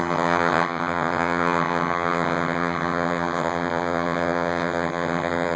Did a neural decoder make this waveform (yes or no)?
yes